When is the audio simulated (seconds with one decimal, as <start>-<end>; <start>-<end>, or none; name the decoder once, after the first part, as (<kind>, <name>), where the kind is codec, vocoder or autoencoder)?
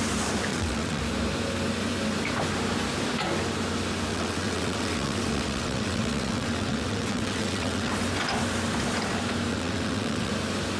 0.5-1.0 (vocoder, WaveNeXt); 4.1-7.9; 9.5-10.3